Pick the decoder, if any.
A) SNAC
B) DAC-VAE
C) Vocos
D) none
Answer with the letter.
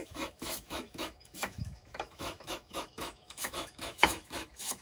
B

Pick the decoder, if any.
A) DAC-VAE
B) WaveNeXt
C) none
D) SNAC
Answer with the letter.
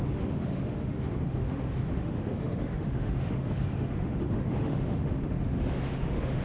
A